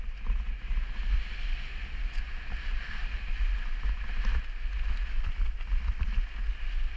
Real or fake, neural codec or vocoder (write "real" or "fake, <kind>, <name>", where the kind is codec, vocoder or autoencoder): real